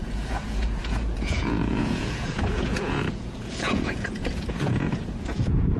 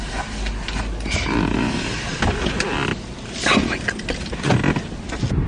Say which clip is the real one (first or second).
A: second